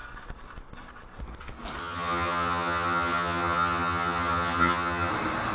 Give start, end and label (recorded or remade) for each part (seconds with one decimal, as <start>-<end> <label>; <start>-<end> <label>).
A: 0.0-1.8 recorded; 1.8-5.1 remade; 5.1-5.5 recorded